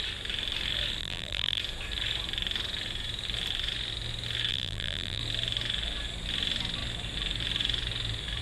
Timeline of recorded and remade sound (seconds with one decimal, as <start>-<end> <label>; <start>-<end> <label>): 0.0-1.0 recorded; 1.0-1.6 remade; 1.6-4.5 recorded; 4.5-5.2 remade; 5.2-8.4 recorded